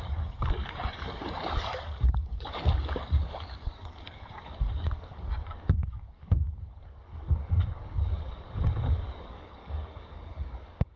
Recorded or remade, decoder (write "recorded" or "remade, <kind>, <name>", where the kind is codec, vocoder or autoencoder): remade, codec, DAC